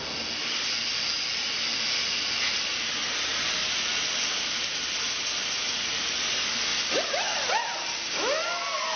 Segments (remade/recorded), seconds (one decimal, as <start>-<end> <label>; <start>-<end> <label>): 0.0-9.0 recorded